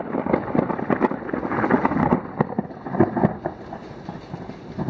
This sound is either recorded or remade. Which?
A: remade